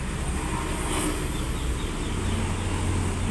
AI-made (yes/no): no